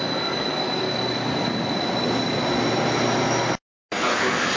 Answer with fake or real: real